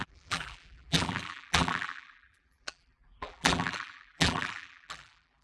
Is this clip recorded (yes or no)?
no